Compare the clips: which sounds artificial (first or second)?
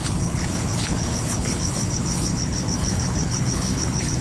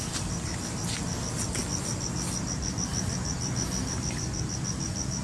first